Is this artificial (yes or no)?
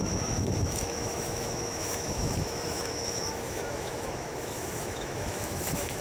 yes